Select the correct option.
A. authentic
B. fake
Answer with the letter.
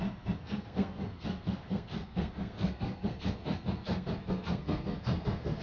B